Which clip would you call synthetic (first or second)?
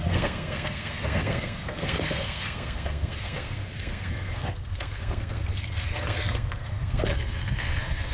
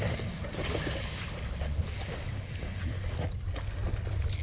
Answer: first